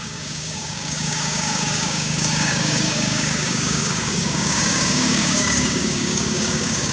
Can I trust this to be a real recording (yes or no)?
no